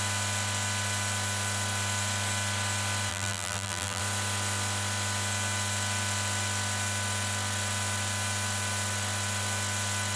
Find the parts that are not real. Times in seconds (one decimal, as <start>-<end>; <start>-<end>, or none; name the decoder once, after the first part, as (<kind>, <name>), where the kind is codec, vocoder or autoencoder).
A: 3.1-4.0 (vocoder, BigVGAN v2)